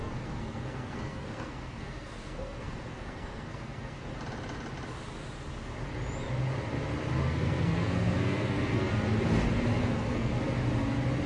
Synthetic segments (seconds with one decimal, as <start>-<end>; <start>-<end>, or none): 0.0-4.1; 7.2-8.9; 9.8-10.3

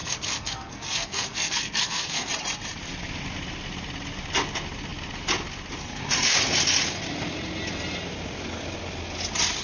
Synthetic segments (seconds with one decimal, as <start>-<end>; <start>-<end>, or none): 0.0-2.3